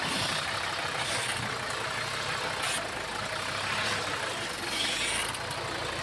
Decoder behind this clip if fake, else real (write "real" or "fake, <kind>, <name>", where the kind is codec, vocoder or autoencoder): real